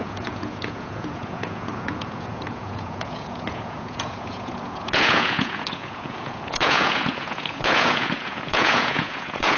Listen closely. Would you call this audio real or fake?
fake